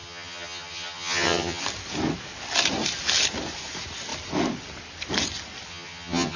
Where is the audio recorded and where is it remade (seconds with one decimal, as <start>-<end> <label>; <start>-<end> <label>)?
0.0-1.6 remade; 1.6-5.7 recorded; 5.7-6.4 remade